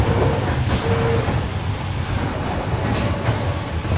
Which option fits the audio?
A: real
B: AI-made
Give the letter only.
A